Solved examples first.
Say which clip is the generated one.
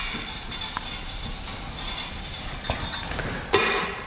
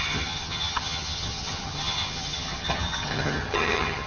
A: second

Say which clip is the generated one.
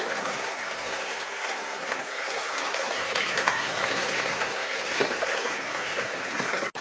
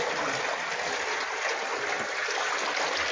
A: first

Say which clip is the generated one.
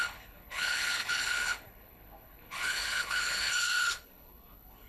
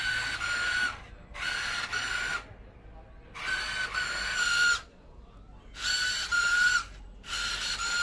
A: first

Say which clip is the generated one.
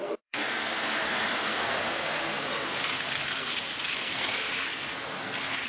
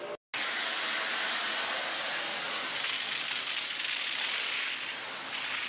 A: first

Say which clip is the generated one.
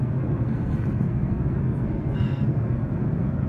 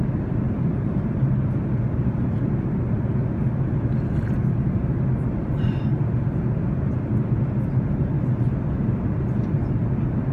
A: first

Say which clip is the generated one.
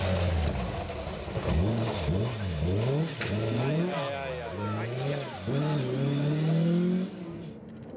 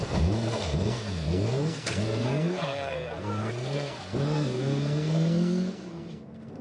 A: second